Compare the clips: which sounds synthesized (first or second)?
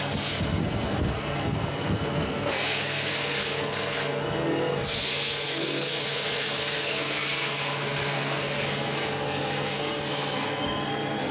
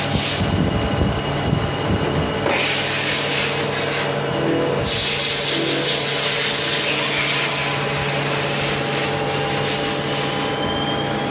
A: first